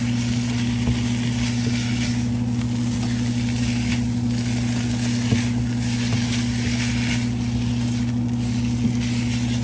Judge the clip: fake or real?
real